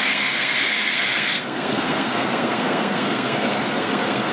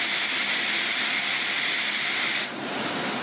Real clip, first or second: second